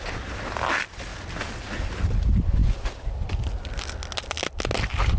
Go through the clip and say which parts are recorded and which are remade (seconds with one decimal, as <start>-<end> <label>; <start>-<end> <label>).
0.0-5.2 recorded